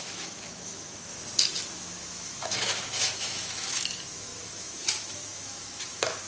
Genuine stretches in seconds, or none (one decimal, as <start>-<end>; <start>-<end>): 1.1-1.7